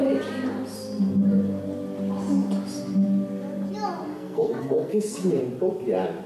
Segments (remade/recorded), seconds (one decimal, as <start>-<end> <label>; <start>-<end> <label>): 0.0-4.1 recorded; 4.1-5.4 remade; 5.4-6.3 recorded